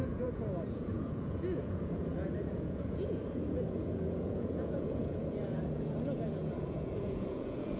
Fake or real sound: fake